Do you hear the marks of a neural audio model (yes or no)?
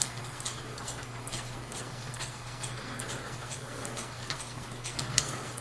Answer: yes